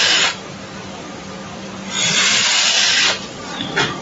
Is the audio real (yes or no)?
yes